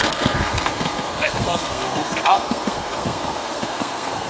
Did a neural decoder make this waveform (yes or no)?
yes